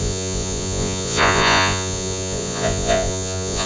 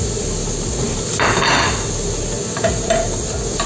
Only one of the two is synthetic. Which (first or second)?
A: first